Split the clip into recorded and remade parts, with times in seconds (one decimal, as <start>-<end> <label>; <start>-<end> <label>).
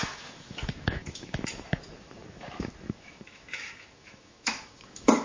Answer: 0.0-5.2 remade